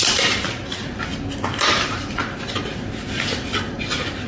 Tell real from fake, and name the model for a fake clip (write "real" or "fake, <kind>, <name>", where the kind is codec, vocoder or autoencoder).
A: real